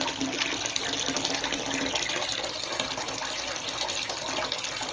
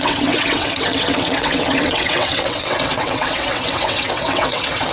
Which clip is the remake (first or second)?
second